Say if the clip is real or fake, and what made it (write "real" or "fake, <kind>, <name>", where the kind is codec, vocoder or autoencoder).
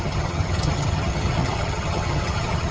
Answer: fake, vocoder, HiFi-GAN